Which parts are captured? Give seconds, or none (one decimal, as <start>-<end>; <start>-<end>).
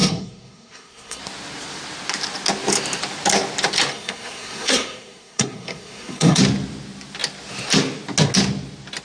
1.2-3.9; 6.4-9.0